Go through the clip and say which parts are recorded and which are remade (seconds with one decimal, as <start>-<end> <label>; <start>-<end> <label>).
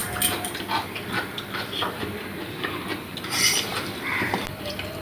0.0-2.0 remade; 2.0-3.7 recorded; 3.7-4.4 remade; 4.4-5.0 recorded